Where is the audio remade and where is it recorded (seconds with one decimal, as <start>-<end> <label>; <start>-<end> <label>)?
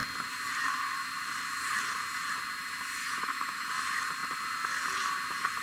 0.0-3.0 recorded; 3.0-3.7 remade; 3.7-5.6 recorded